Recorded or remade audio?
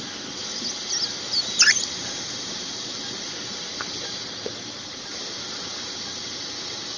recorded